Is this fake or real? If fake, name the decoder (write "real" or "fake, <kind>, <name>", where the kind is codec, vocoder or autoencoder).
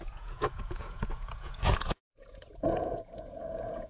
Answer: fake, vocoder, Vocos